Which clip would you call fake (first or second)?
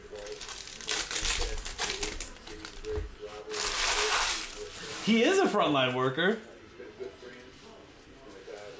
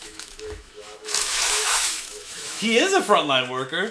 second